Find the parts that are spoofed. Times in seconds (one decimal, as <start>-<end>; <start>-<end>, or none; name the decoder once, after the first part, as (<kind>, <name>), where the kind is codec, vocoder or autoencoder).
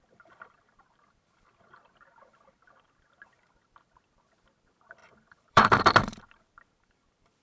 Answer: 5.0-6.2 (vocoder, BigVGAN v2)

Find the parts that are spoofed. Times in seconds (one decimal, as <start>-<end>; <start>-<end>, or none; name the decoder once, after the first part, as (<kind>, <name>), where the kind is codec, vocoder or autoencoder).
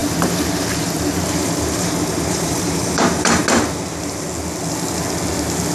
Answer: 0.0-3.4 (vocoder, BigVGAN v2)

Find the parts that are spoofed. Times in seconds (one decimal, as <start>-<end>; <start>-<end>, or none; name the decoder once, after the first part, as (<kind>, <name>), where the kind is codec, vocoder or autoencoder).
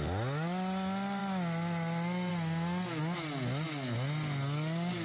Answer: none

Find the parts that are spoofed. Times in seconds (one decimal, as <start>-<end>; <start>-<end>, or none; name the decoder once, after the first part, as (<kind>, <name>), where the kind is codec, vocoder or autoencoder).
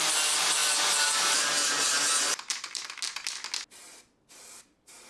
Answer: 0.6-2.8 (vocoder, BigVGAN v2)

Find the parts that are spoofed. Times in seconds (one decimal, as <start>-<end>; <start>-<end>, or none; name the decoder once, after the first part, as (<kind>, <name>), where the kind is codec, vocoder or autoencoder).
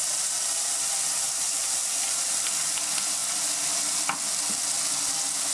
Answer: 0.0-2.6 (vocoder, BigVGAN v2); 3.2-4.2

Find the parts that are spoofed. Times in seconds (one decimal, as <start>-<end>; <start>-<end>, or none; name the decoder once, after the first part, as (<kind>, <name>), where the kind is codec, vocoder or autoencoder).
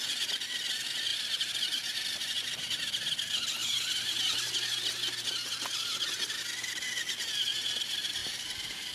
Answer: 8.2-8.9 (vocoder, BigVGAN v2)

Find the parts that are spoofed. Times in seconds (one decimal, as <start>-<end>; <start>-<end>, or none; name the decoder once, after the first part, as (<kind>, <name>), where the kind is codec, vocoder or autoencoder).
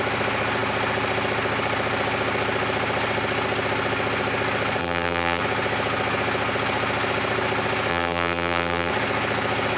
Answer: 4.8-5.4 (vocoder, BigVGAN v2); 7.9-8.9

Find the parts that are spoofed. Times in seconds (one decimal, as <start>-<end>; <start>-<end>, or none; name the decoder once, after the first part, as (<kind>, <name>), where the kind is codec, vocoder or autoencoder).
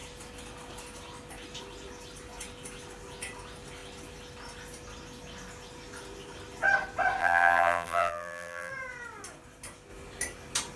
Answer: 7.2-8.7 (vocoder, BigVGAN v2)